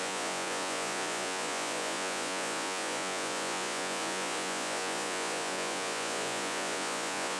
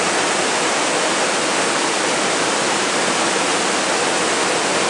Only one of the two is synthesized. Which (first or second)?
first